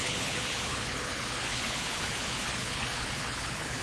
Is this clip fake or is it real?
fake